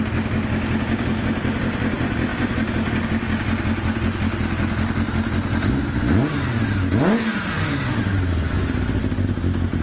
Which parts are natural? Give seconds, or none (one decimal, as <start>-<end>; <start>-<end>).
0.0-7.4; 8.6-9.8